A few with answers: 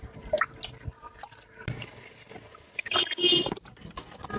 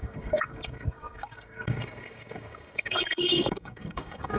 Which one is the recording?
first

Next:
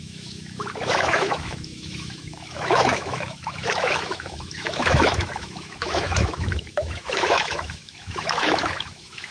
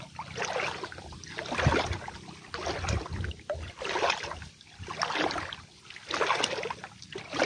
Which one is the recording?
second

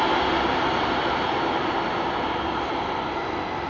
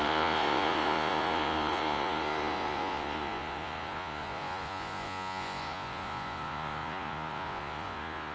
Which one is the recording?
first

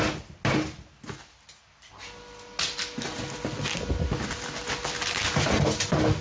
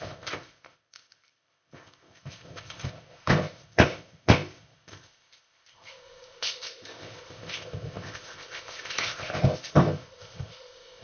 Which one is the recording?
first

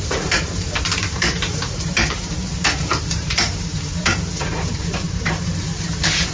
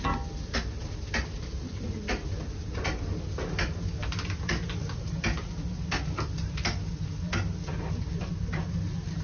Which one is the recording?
second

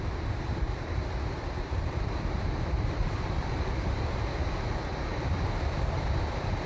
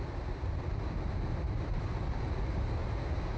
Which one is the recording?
second